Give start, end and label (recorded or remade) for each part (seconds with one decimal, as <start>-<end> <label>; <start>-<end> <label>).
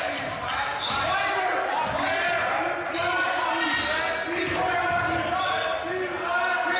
0.0-6.8 recorded